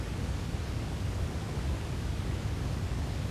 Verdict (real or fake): fake